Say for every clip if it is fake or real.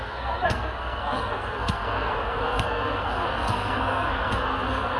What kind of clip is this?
fake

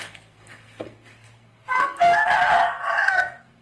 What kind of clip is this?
fake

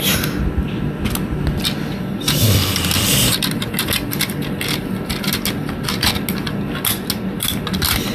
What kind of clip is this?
real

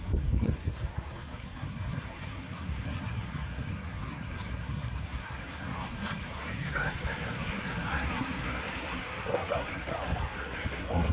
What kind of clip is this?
fake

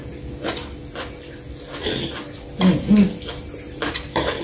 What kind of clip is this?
real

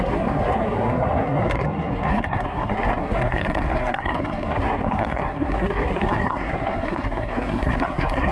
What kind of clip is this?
fake